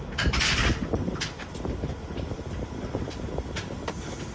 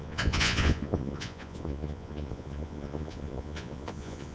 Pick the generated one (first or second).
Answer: second